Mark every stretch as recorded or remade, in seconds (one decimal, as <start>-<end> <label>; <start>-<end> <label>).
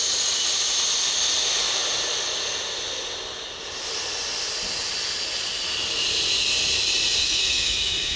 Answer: 0.0-7.2 recorded; 7.2-8.2 remade